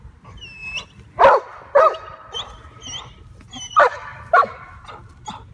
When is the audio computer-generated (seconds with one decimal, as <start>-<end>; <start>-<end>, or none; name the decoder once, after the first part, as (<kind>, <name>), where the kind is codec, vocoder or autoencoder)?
4.1-5.5 (vocoder, BigVGAN v2)